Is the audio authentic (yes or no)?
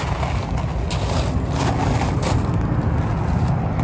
yes